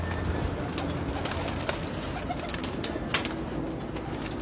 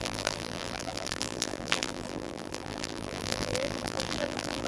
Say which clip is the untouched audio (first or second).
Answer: first